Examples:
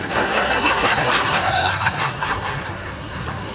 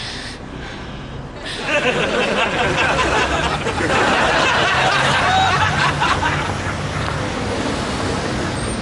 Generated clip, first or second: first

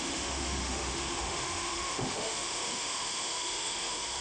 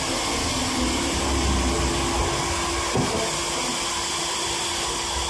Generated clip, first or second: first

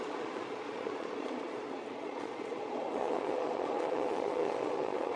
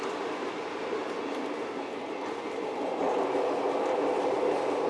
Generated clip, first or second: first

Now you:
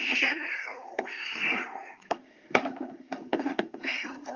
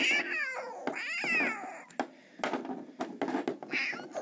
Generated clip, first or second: first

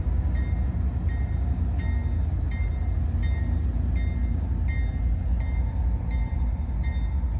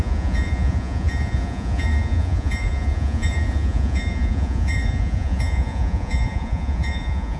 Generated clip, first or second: second